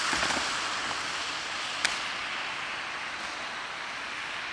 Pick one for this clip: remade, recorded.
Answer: recorded